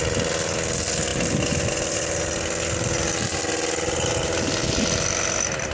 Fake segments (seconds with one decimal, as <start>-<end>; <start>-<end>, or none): none